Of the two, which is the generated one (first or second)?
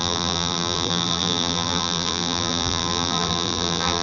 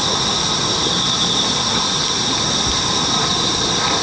first